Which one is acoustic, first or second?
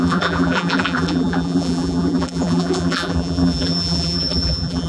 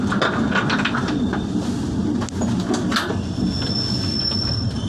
second